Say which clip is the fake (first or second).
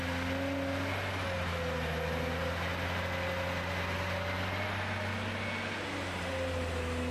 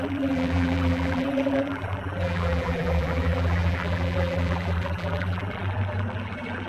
second